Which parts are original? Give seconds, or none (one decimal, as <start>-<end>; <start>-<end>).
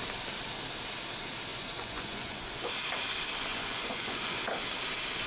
0.0-1.5; 2.7-3.5; 4.4-5.3